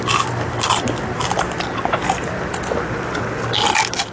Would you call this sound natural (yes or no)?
yes